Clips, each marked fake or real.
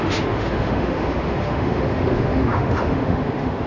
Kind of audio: fake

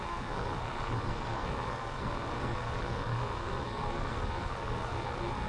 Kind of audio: fake